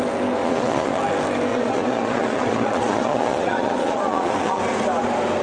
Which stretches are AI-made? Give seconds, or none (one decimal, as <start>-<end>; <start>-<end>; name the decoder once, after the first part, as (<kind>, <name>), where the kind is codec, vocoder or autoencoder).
0.4-1.0 (vocoder, Vocos); 1.5-4.6